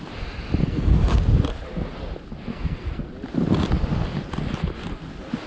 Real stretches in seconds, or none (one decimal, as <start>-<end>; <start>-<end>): 0.0-0.6; 1.2-2.5; 3.1-5.5